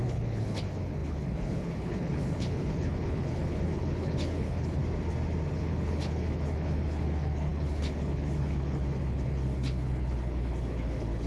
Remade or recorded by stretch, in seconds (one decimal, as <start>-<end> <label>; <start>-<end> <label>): 0.0-4.8 remade; 4.8-5.5 recorded; 5.5-11.3 remade